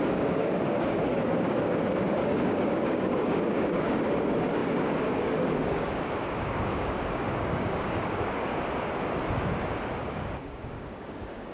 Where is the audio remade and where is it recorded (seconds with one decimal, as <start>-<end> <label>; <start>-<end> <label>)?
0.0-8.5 remade; 8.5-10.0 recorded; 10.0-11.5 remade